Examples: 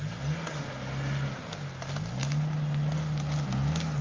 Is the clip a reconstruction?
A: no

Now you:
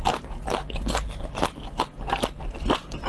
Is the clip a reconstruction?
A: no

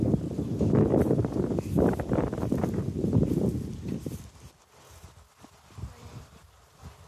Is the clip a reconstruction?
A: yes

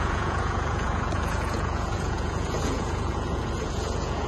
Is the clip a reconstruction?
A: yes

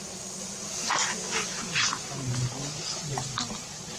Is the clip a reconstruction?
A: no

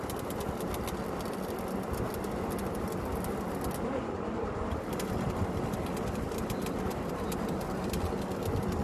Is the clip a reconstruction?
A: no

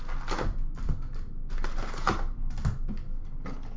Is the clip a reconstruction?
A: no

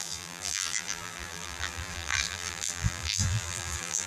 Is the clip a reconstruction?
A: yes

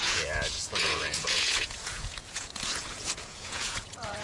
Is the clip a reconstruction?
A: yes